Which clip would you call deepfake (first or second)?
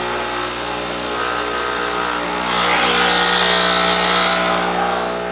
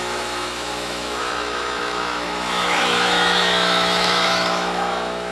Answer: second